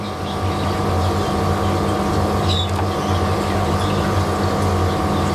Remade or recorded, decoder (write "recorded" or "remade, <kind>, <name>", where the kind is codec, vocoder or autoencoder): recorded